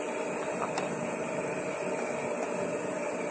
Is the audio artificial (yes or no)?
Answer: no